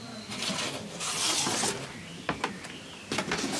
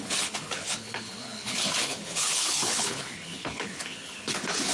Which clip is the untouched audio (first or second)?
first